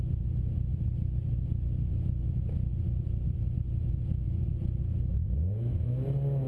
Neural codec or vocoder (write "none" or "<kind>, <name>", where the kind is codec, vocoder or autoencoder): none